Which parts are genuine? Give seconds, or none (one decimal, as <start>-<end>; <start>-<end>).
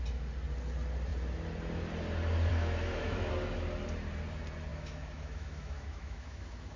0.0-2.5; 3.3-4.7